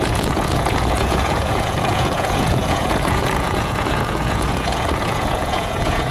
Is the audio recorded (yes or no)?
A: no